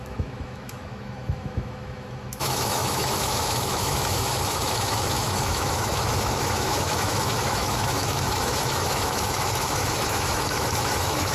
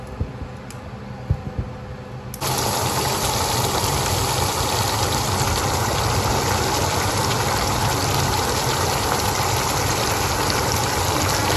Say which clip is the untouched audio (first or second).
second